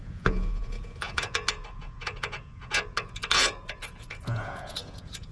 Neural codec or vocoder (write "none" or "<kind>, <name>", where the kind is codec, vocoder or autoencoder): vocoder, Vocos